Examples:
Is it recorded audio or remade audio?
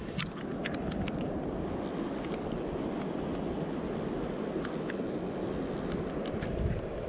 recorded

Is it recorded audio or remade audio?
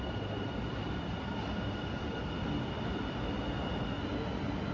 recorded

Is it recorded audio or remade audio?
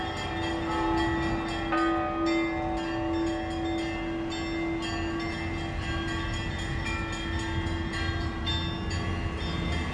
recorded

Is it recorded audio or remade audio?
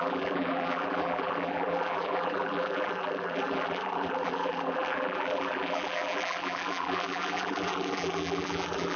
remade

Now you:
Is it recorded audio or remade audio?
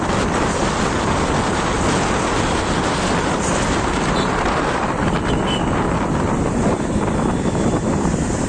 remade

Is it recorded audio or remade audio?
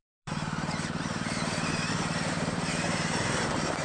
remade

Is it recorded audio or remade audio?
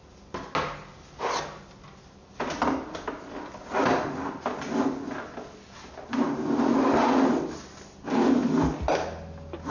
recorded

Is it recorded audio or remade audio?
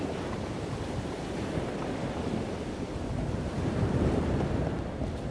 remade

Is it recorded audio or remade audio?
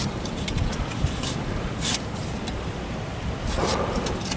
remade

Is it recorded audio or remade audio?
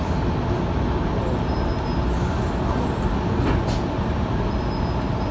recorded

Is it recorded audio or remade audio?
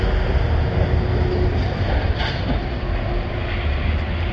recorded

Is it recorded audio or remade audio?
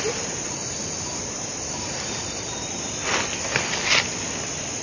recorded